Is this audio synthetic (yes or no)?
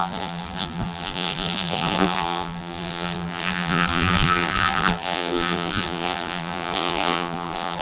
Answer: yes